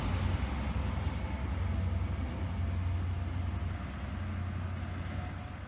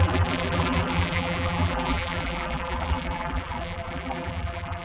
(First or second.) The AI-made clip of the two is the second